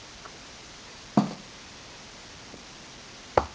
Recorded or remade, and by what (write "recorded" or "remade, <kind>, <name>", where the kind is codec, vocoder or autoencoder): recorded